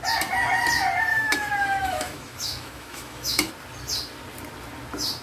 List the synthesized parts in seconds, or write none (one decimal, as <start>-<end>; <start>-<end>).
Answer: 1.1-3.5